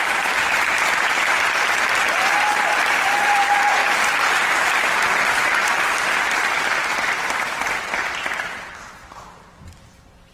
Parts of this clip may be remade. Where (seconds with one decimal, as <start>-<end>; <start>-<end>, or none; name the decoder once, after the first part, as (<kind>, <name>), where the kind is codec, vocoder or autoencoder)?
0.0-3.8 (vocoder, BigVGAN v2); 5.8-10.3